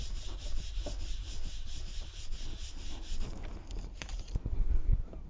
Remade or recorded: recorded